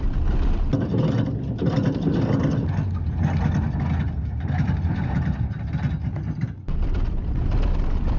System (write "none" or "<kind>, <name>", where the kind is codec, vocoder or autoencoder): none